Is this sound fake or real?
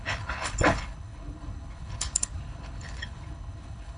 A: fake